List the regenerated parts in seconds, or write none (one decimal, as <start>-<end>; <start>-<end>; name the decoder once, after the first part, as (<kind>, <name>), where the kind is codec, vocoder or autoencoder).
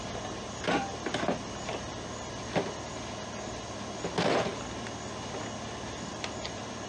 none